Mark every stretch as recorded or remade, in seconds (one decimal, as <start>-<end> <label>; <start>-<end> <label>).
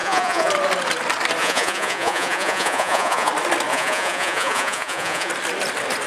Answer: 0.0-0.5 remade; 0.5-1.4 recorded; 1.4-3.3 remade; 3.3-3.7 recorded; 3.7-5.3 remade; 5.3-6.1 recorded